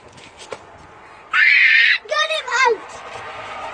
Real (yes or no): no